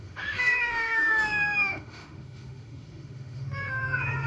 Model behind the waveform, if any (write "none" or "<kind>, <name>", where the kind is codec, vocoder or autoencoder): autoencoder, DAC-VAE